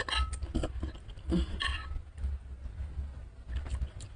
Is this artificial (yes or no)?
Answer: no